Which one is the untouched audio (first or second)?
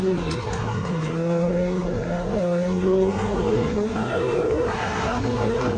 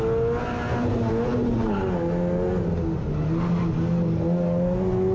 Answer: second